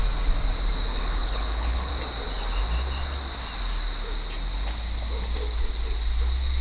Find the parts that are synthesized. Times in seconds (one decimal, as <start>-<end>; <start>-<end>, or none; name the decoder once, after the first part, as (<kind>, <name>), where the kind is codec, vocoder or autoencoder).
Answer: 0.9-1.9 (codec, HILCodec)